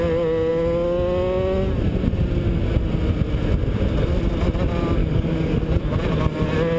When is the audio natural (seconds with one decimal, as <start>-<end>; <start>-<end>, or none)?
0.0-5.0; 5.8-6.8